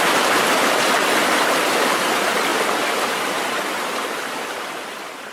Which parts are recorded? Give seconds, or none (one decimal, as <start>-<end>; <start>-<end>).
0.0-5.3